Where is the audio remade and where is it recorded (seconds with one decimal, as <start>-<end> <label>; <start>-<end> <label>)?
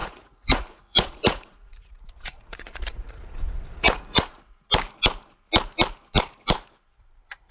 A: 0.0-4.4 remade; 4.4-7.5 recorded